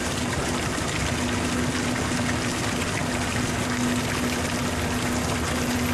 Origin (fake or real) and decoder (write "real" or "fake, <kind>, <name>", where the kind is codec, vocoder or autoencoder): real